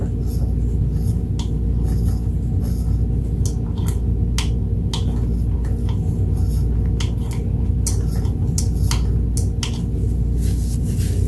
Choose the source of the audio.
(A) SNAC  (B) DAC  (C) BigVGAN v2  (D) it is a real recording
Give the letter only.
D